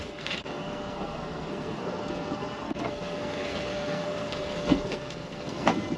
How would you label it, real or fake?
fake